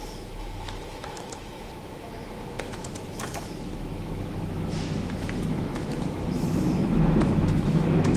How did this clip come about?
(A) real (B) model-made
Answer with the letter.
B